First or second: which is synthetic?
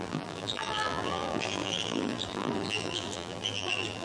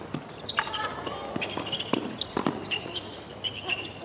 first